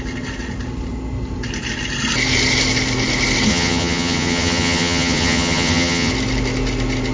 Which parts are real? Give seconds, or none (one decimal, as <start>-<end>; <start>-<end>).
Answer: 0.0-3.5; 6.1-7.1